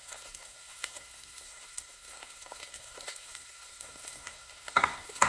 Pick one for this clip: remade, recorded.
remade